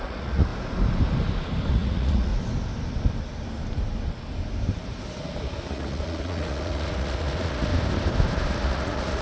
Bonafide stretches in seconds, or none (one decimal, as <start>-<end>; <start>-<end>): 0.5-1.7; 2.3-5.7; 7.7-8.5